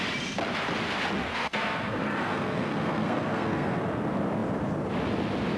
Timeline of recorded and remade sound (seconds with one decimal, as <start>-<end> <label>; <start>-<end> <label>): 0.0-1.3 recorded; 1.3-3.8 remade; 3.8-5.6 recorded